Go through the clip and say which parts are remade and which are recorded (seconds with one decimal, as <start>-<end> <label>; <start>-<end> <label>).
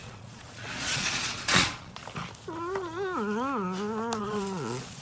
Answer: 0.0-2.0 remade; 2.0-4.2 recorded; 4.2-5.0 remade